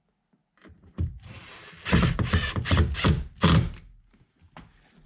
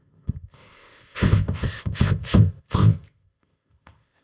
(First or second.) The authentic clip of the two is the first